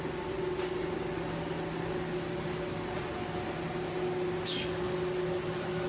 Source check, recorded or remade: recorded